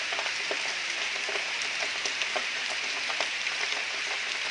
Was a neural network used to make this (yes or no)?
yes